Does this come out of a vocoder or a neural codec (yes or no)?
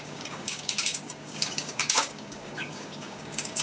yes